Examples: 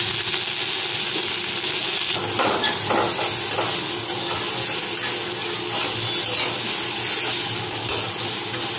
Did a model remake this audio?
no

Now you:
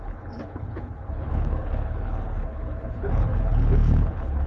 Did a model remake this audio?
yes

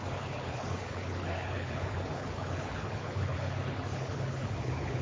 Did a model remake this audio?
yes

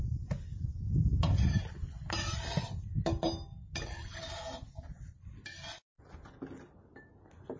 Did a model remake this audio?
no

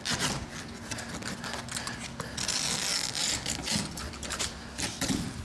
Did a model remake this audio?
no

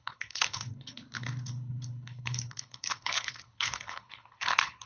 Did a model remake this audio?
yes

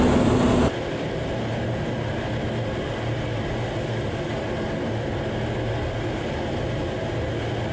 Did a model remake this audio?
no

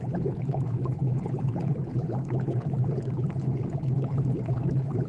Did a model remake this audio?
yes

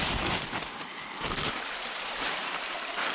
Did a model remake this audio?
no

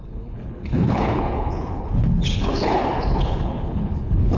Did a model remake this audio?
yes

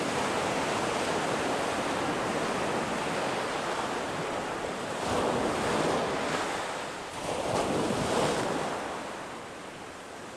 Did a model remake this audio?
no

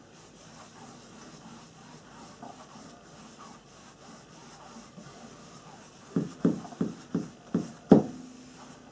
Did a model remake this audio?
no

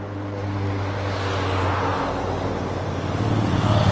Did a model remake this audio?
no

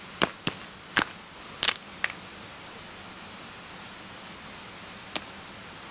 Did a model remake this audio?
no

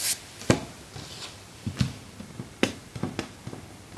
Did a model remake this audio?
no